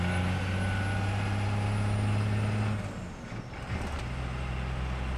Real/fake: real